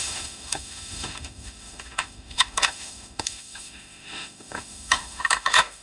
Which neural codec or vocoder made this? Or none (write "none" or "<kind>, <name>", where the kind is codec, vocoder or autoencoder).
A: autoencoder, DAC-VAE